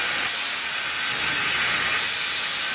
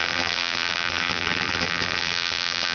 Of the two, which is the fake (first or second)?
second